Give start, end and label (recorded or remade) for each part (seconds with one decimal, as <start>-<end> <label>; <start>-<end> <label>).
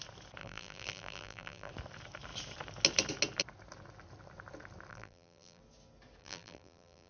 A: 0.0-0.4 recorded; 0.4-1.7 remade; 1.7-4.9 recorded; 4.9-5.6 remade; 5.6-6.2 recorded; 6.2-7.1 remade